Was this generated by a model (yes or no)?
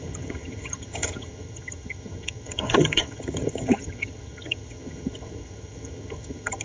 yes